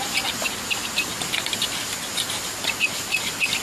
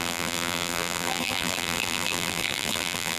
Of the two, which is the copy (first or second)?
second